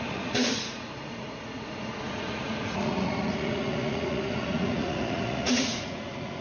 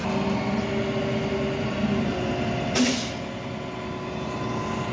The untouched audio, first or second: second